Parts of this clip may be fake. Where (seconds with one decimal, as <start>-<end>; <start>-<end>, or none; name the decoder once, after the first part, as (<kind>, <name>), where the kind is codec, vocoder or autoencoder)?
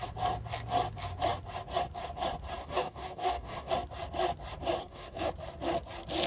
2.6-3.7 (codec, DAC); 4.8-5.3